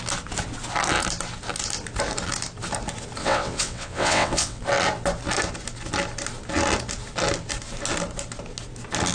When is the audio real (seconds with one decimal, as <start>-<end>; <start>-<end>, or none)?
0.0-3.2; 4.6-9.1

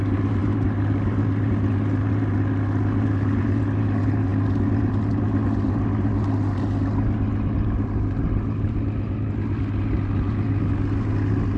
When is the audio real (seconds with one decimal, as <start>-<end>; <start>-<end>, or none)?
0.0-11.6

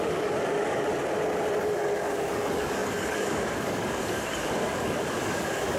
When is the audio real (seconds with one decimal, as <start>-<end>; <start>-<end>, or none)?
0.9-1.6

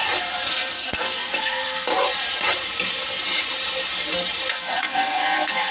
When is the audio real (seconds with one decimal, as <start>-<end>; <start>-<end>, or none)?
0.0-0.5; 1.9-4.5

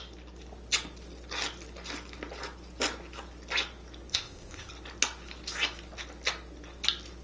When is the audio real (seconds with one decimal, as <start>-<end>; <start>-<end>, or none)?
0.0-4.1; 4.7-7.2

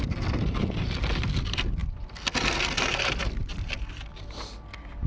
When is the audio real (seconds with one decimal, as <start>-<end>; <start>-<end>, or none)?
0.0-5.1

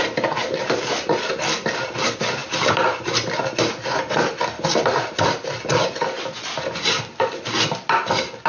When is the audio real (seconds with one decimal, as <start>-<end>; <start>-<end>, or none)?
0.0-8.5